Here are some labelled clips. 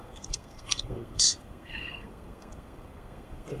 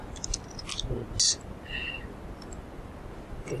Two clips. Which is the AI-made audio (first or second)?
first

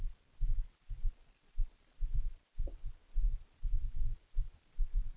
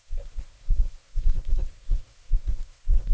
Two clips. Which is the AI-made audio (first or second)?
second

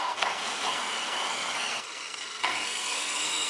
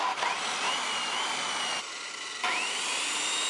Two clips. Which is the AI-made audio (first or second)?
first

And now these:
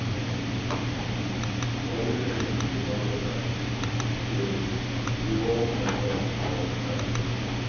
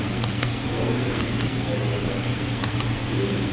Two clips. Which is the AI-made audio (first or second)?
second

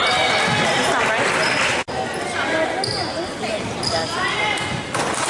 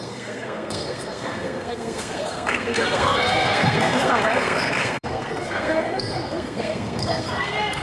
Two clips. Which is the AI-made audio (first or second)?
second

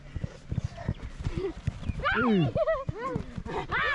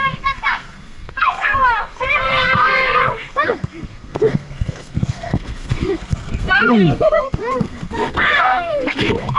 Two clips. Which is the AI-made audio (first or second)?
second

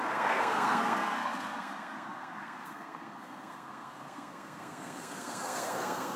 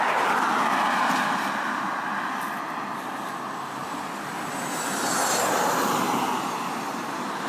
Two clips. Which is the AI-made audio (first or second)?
first